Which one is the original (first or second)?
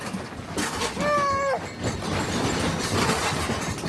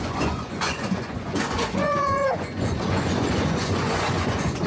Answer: first